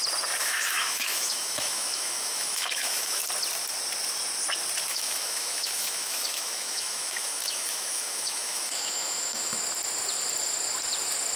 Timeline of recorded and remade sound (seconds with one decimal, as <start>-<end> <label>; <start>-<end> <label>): 0.0-0.4 recorded; 0.4-3.2 remade; 3.2-4.9 recorded; 4.9-9.6 remade; 9.6-11.4 recorded